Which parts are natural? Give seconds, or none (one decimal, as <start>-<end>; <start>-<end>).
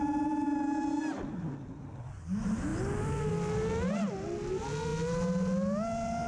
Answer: 0.0-6.3